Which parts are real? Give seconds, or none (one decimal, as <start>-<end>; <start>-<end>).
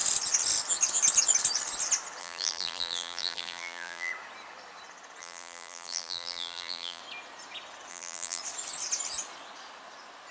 0.0-2.2; 4.1-5.2; 7.0-7.9; 8.4-10.3